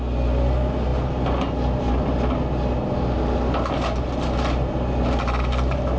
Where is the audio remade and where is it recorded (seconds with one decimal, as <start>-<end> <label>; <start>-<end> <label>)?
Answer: 0.0-6.0 recorded

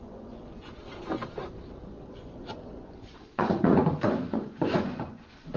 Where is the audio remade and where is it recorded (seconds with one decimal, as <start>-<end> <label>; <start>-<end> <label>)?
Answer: 0.0-0.8 remade; 0.8-1.8 recorded; 1.8-5.6 remade

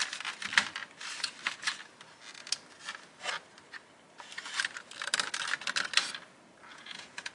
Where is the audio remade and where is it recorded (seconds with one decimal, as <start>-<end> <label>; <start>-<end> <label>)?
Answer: 0.0-6.7 recorded; 6.7-7.3 remade

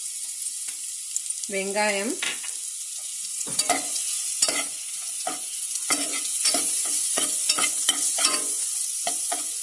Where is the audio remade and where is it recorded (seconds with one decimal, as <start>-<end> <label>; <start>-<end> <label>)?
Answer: 0.0-0.7 remade; 0.7-2.7 recorded; 2.7-9.6 remade

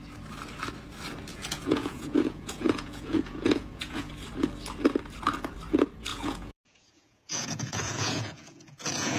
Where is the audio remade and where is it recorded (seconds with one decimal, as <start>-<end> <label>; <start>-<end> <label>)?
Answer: 0.0-1.3 recorded; 1.3-4.1 remade; 4.1-6.1 recorded; 6.1-9.2 remade